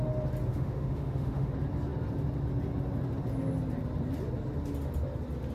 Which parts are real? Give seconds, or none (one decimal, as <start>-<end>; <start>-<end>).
0.0-0.5; 1.5-5.5

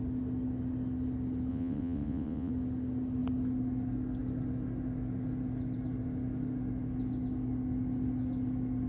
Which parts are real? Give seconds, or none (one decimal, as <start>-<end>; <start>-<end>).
0.0-1.5; 2.5-8.9

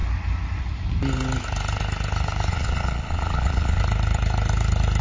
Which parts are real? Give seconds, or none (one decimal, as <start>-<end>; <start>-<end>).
0.0-2.5; 3.8-5.0